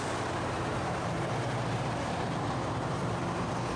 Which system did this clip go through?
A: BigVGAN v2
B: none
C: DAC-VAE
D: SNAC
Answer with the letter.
A